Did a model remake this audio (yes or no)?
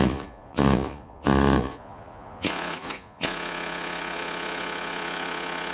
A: yes